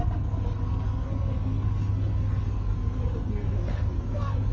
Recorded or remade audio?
remade